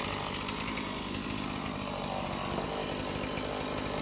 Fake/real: real